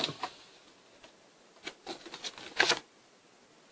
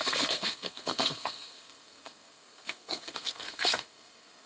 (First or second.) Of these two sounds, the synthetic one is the second